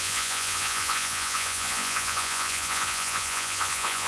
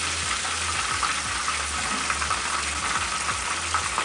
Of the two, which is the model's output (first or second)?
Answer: first